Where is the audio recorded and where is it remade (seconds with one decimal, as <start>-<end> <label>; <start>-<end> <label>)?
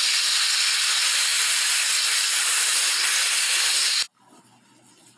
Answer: 0.0-5.2 recorded